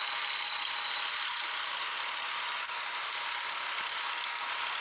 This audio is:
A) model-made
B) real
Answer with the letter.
B